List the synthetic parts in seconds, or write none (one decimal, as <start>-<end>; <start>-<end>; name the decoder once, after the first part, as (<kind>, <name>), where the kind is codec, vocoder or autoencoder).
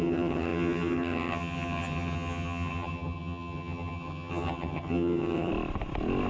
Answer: 0.0-5.5 (vocoder, HiFi-GAN)